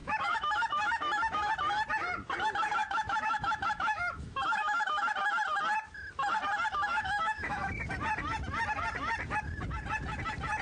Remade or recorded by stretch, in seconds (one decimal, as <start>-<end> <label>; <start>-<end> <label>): 0.0-1.5 remade; 1.5-2.8 recorded; 2.8-5.0 remade; 5.0-6.9 recorded; 6.9-7.7 remade; 7.7-10.6 recorded